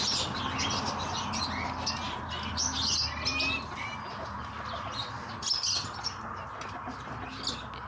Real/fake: real